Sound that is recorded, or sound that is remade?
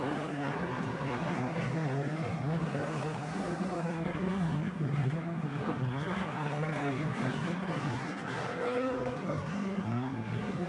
remade